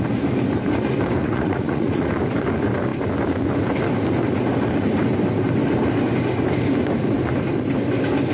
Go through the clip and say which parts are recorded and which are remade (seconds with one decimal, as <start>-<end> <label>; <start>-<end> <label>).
0.0-1.2 recorded; 1.2-2.1 remade; 2.1-8.3 recorded